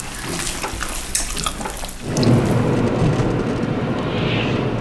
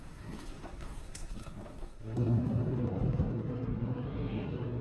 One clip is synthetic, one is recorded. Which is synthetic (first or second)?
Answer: second